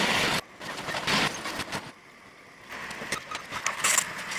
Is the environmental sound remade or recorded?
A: recorded